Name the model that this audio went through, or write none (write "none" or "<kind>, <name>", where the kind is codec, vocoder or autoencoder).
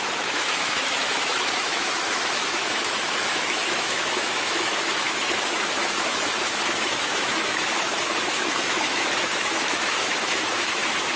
autoencoder, DAC-VAE